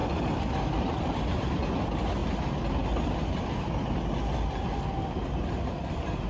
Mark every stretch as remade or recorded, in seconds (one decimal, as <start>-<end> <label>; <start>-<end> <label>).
0.0-6.3 recorded

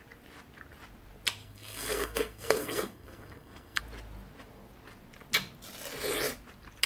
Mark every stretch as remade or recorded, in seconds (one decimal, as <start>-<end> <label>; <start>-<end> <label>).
0.0-1.4 recorded; 1.4-3.8 remade; 3.8-6.9 recorded

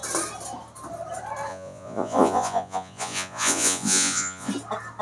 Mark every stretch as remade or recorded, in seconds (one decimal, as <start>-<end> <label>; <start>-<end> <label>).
0.0-1.5 recorded; 1.5-4.5 remade; 4.5-5.0 recorded

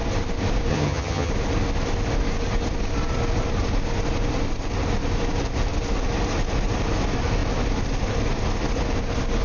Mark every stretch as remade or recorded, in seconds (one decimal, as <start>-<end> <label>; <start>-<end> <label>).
0.0-0.7 recorded; 0.7-1.3 remade; 1.3-9.4 recorded

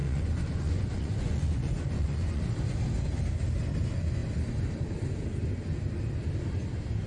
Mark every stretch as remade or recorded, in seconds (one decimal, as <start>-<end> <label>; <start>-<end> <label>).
0.0-2.4 remade; 2.4-7.1 recorded

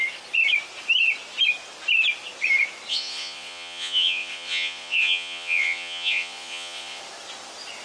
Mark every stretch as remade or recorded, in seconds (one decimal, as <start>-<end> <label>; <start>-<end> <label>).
0.0-2.9 recorded; 2.9-7.0 remade; 7.0-7.8 recorded